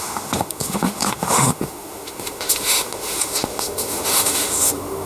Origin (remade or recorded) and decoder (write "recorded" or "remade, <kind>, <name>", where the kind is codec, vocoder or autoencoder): remade, autoencoder, DAC-VAE